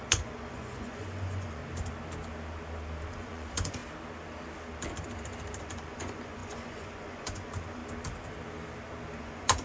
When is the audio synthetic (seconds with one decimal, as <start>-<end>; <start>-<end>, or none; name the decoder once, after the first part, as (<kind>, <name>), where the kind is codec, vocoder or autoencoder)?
0.0-1.6 (vocoder, Vocos); 3.1-3.8; 5.6-7.8; 9.2-9.6